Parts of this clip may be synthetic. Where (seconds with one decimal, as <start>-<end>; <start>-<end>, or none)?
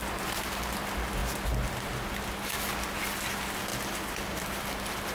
none